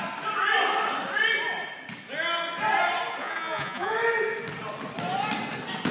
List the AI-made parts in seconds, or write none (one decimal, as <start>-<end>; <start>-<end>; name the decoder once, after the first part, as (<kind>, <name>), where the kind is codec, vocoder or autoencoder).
3.2-3.9 (vocoder, Vocos)